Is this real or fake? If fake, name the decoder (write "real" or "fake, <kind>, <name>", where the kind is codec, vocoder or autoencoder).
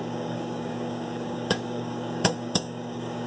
fake, codec, DAC